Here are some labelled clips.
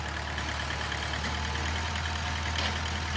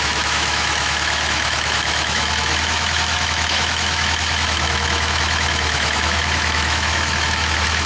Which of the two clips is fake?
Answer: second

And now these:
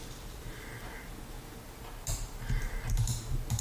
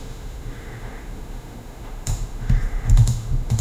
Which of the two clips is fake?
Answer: second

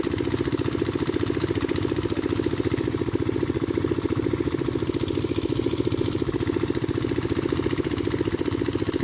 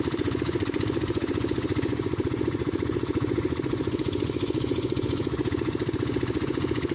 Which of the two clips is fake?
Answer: second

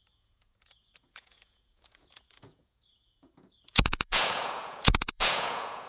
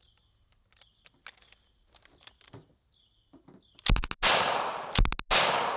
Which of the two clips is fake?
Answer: first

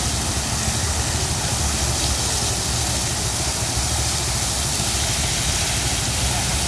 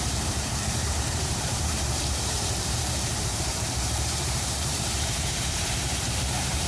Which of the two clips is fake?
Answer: second